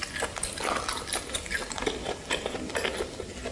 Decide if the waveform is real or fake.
real